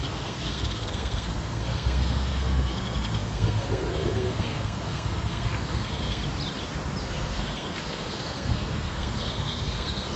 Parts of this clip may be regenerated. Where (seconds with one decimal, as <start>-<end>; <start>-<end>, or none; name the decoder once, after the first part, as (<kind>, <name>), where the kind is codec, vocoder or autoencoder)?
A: 0.0-6.2 (codec, SNAC); 7.0-10.2